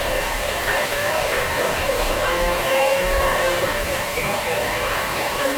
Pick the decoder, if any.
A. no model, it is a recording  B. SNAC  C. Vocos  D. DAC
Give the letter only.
D